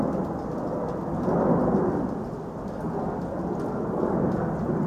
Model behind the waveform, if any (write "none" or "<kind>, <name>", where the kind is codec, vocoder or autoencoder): none